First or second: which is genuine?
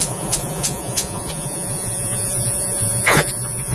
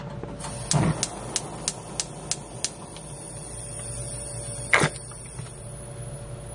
second